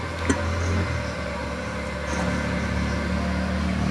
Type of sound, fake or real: real